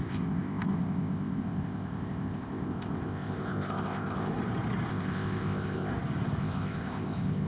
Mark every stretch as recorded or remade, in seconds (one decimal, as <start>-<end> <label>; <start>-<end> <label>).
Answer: 0.0-4.3 remade; 4.3-4.9 recorded; 4.9-5.9 remade; 5.9-6.4 recorded; 6.4-7.5 remade

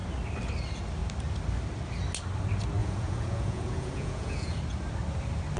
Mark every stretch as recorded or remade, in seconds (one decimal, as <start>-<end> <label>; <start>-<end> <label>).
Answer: 0.0-2.8 recorded; 2.8-4.6 remade; 4.6-5.6 recorded

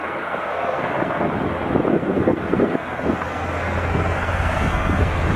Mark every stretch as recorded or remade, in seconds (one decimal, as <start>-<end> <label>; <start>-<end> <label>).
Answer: 0.0-1.3 remade; 1.3-1.9 recorded; 1.9-5.4 remade

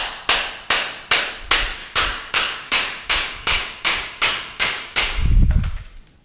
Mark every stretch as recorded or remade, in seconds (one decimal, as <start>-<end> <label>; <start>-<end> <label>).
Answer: 0.0-1.8 recorded; 1.8-5.5 remade; 5.5-6.2 recorded

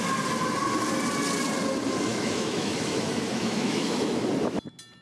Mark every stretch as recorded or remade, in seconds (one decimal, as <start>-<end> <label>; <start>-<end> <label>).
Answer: 0.0-2.1 recorded; 2.1-4.3 remade; 4.3-5.0 recorded

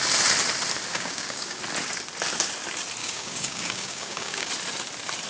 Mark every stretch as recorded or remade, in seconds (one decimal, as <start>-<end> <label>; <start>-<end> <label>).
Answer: 0.0-0.9 recorded; 0.9-1.6 remade; 1.6-3.0 recorded; 3.0-4.5 remade; 4.5-5.3 recorded